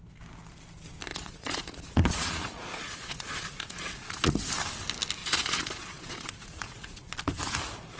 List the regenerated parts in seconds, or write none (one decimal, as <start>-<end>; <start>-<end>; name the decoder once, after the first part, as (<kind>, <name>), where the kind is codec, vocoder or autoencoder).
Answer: 1.1-4.3 (vocoder, Vocos); 5.2-7.0